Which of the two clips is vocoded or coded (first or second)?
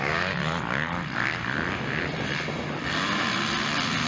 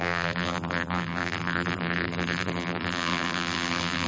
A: second